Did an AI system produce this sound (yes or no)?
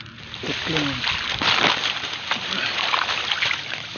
no